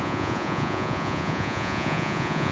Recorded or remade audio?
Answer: remade